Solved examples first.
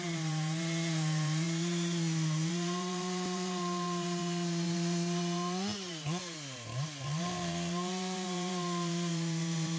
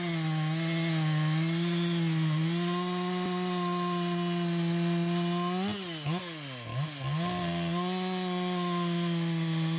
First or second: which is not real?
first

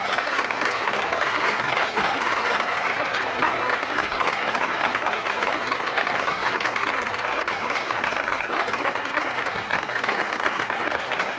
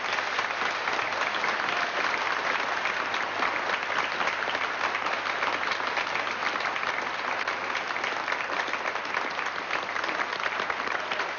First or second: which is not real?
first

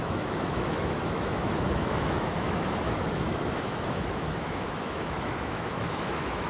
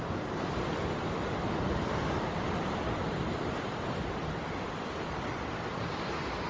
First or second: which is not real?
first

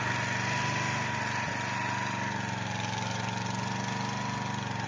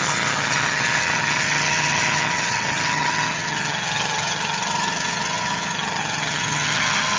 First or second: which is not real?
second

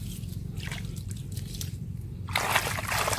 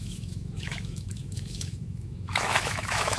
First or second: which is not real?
second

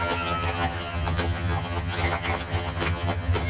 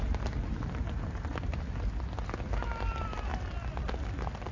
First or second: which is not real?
first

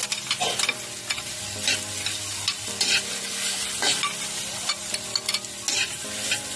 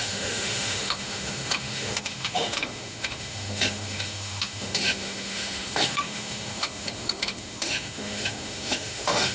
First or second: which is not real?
second